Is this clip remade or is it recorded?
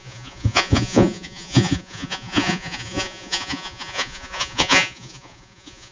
remade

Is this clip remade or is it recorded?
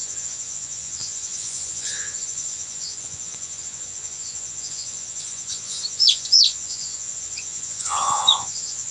remade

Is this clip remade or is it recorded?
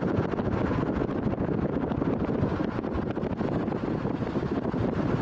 recorded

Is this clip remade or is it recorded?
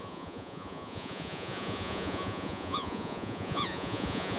remade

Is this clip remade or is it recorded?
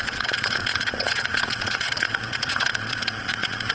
remade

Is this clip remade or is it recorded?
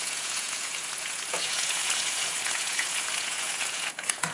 remade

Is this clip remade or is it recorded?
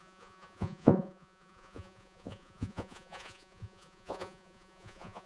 remade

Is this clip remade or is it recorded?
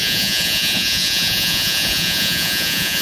remade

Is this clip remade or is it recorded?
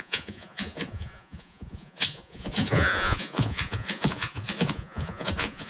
remade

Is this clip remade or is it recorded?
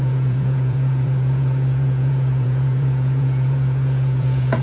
remade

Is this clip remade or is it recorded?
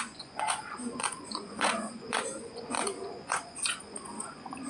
remade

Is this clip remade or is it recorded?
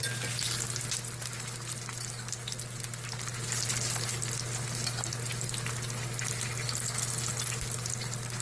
recorded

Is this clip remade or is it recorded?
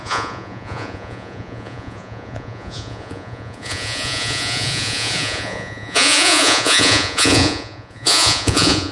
remade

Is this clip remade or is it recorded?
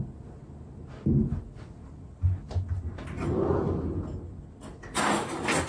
recorded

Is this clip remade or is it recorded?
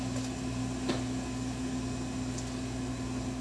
recorded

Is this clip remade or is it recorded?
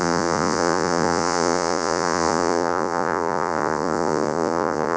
remade